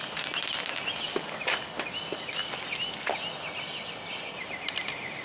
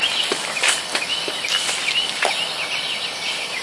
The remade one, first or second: second